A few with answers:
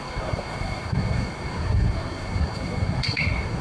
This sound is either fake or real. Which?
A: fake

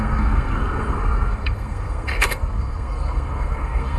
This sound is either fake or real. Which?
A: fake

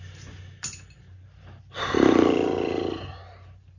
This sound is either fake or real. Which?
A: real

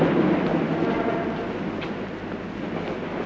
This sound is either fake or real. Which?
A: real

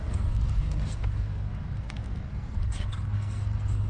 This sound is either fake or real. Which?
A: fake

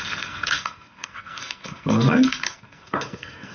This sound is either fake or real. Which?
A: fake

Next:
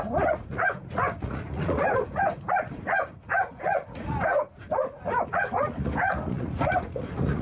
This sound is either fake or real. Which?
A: fake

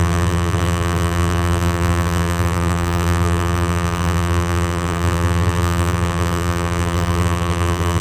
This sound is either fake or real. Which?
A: fake